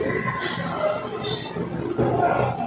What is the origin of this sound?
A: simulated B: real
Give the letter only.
B